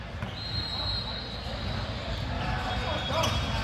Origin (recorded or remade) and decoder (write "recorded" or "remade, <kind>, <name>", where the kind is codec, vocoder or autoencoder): recorded